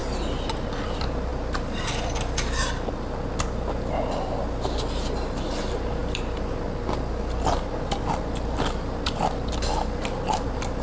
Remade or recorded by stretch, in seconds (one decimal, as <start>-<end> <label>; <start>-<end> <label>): 0.0-10.8 recorded